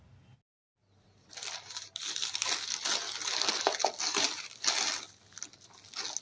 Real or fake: real